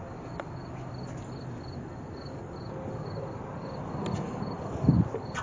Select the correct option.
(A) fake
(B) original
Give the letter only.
B